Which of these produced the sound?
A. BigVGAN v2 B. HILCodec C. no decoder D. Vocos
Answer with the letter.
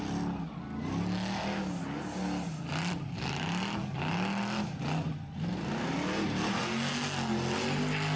C